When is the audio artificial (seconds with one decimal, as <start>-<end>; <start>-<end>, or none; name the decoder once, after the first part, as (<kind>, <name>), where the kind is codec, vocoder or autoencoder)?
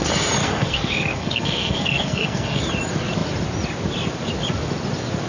0.4-2.6 (codec, SNAC)